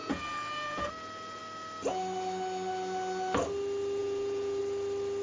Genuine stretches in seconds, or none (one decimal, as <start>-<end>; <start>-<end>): 0.9-4.0; 4.6-5.2

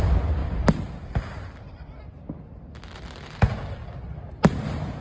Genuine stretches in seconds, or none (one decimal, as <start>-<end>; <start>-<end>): 0.0-5.0

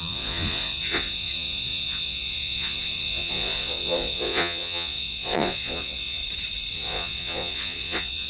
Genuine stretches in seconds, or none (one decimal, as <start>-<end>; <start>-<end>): 6.2-6.7

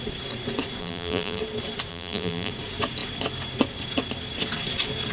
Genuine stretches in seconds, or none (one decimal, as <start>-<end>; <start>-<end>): 0.0-0.8; 1.4-1.9; 2.5-5.1

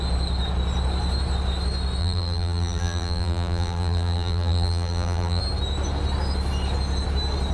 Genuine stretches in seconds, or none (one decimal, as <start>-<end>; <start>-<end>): 0.0-2.0; 5.4-7.5

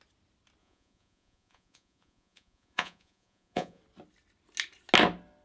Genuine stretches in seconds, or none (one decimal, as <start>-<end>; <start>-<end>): 0.0-0.6; 3.8-5.4

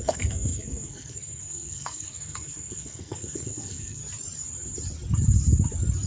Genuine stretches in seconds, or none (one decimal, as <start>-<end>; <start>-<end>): 4.0-6.1

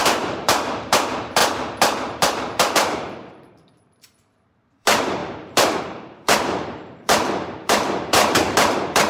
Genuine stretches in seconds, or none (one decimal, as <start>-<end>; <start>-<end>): none